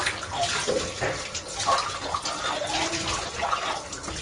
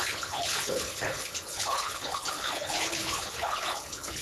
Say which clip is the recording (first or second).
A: first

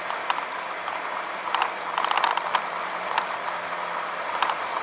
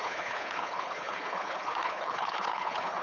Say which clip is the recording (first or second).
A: first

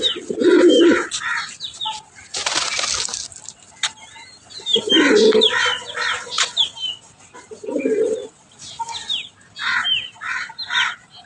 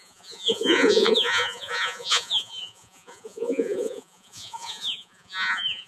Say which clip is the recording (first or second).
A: first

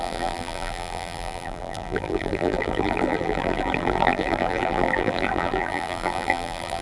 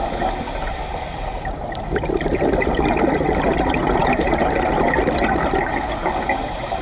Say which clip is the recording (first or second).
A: second